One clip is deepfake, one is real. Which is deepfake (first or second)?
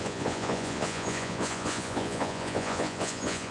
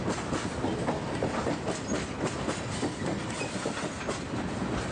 first